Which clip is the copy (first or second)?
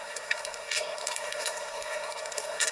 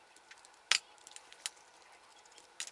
first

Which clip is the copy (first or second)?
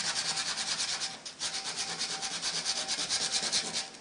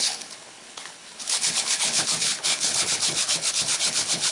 second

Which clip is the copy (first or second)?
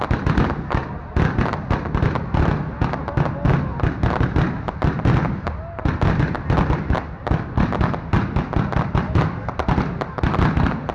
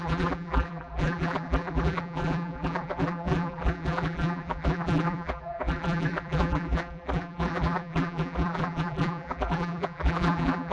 second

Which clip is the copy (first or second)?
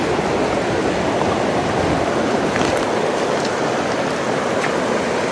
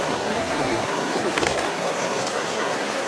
second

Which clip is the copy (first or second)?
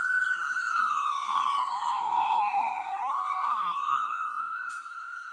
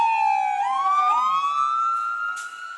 first